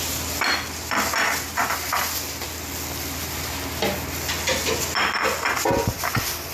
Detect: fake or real real